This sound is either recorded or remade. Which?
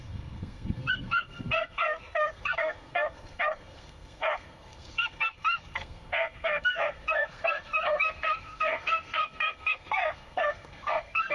remade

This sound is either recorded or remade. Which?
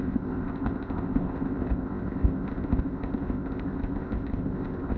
remade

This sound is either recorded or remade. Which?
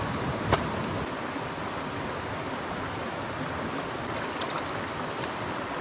recorded